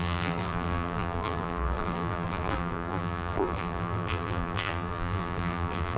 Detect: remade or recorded remade